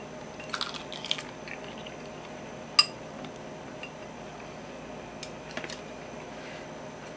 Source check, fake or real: real